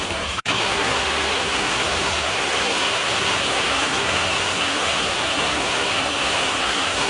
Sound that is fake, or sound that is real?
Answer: fake